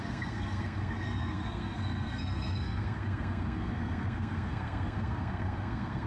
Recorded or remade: remade